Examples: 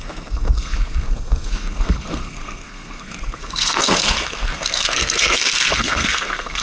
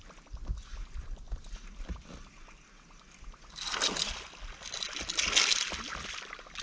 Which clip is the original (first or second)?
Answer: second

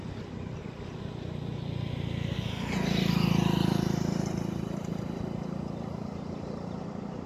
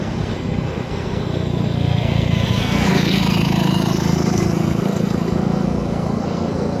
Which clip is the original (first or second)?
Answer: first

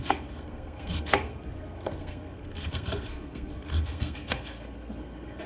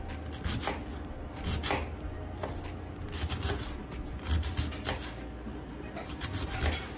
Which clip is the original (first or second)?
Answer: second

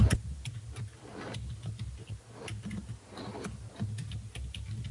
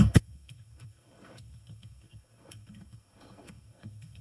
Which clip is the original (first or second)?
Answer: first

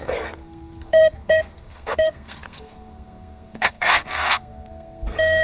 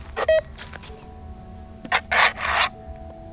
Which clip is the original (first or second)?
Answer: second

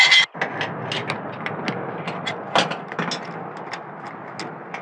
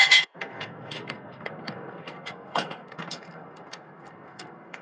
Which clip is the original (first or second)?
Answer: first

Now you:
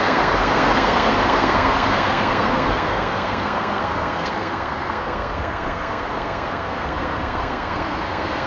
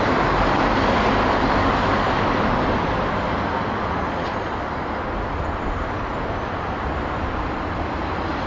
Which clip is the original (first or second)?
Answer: second